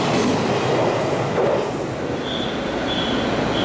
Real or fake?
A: real